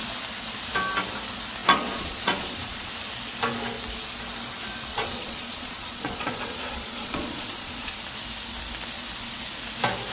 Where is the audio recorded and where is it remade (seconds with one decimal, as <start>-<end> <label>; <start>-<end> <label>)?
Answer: 0.0-1.6 recorded; 1.6-2.9 remade; 2.9-4.9 recorded; 4.9-7.9 remade; 7.9-10.1 recorded